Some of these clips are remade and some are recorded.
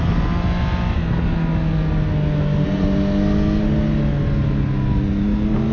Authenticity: recorded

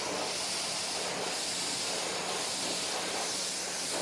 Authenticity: recorded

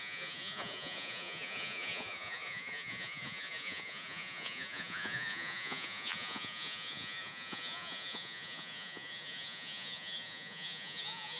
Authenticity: remade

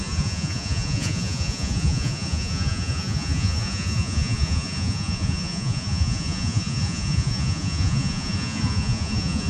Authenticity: remade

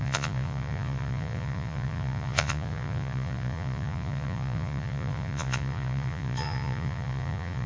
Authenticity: remade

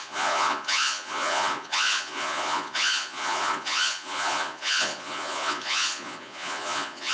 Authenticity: remade